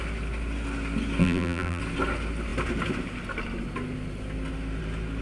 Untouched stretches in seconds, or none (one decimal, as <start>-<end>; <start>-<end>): 0.0-1.2; 1.8-5.2